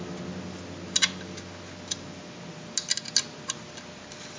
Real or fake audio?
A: real